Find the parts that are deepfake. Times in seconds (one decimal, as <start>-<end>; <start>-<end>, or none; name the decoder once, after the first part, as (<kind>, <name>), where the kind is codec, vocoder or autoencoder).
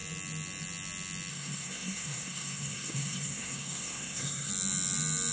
1.3-4.5 (codec, SNAC)